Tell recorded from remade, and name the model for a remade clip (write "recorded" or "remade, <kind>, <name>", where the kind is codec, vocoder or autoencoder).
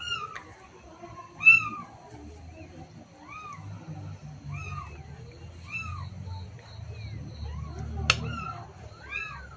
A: recorded